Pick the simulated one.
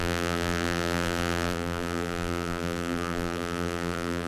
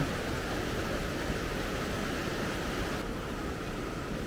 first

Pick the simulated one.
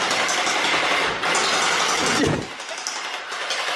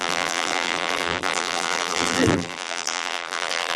second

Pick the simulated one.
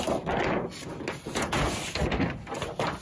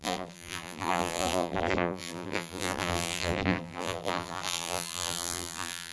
second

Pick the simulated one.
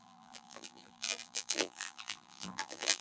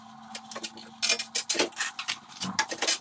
first